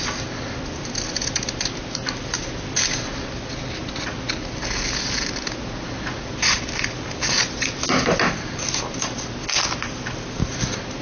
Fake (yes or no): no